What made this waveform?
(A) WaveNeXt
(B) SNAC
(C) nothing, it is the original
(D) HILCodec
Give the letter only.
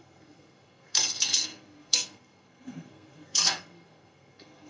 B